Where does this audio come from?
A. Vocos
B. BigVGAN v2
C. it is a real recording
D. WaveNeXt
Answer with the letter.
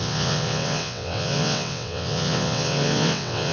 D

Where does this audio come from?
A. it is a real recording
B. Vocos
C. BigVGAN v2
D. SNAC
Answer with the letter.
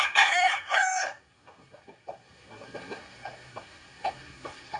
D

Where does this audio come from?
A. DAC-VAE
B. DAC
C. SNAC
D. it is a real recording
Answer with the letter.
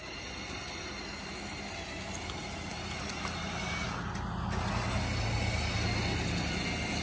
D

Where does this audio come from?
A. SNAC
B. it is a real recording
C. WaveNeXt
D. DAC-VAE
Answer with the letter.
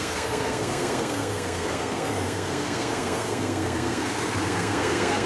A